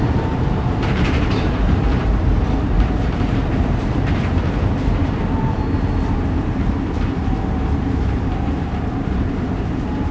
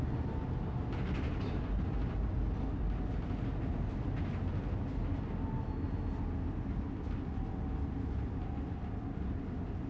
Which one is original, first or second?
second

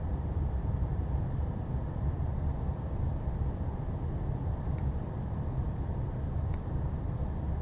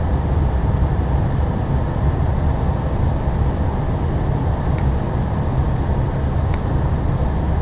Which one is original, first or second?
second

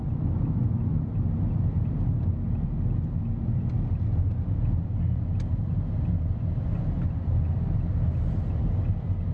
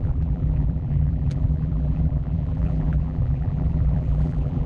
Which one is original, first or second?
first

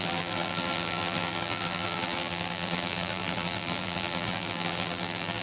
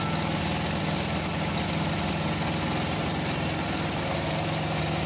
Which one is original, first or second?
second